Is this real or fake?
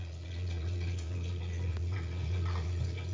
fake